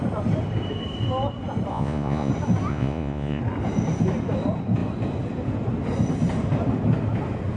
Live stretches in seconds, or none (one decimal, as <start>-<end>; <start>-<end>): 0.0-1.7; 2.3-2.7; 3.4-7.6